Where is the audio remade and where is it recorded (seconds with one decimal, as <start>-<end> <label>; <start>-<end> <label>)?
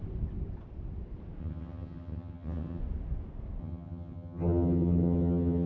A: 0.0-1.4 recorded; 1.4-2.8 remade; 2.8-3.6 recorded; 3.6-5.7 remade